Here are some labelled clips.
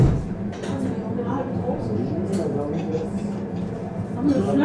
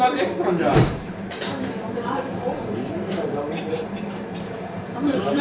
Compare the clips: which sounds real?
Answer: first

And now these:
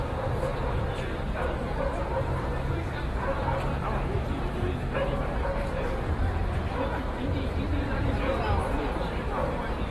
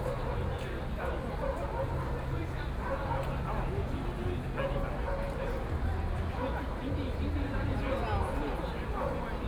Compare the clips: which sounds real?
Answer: second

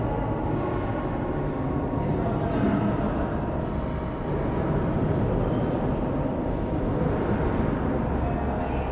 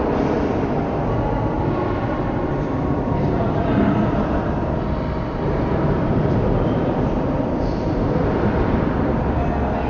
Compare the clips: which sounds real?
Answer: first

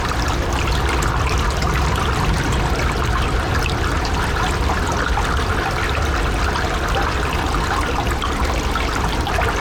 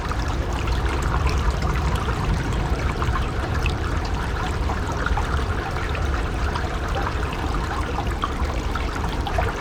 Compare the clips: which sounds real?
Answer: first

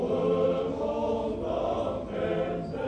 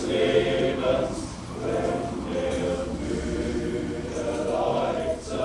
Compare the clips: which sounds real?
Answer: first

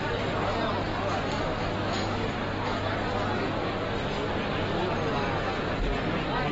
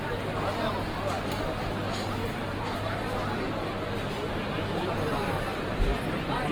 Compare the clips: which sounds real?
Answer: first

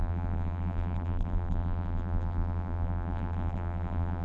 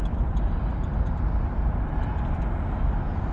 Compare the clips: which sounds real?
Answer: second